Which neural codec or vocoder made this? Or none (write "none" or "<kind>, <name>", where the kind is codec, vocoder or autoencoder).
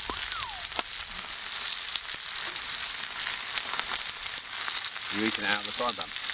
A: none